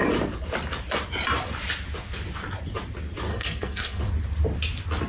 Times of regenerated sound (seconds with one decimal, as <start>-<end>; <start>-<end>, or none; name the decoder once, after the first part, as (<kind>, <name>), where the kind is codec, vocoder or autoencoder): 3.3-4.0 (codec, SNAC)